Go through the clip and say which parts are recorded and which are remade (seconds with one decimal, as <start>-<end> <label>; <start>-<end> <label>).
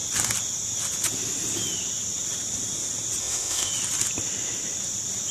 0.0-3.2 recorded; 3.2-3.7 remade; 3.7-5.3 recorded